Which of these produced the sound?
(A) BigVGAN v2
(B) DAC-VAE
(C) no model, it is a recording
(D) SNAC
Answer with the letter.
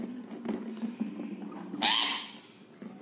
C